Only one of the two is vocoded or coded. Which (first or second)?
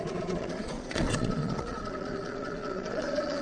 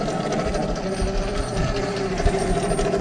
first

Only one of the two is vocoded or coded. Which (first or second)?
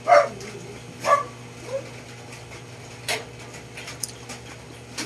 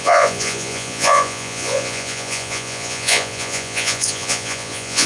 second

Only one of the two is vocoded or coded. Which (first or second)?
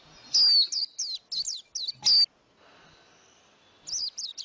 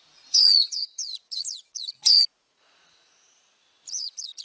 second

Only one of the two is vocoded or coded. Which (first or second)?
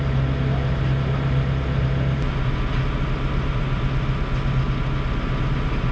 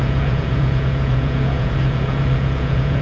second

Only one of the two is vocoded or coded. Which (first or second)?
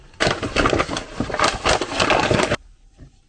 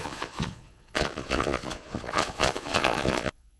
second